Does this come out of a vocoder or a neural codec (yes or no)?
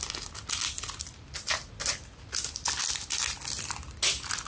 no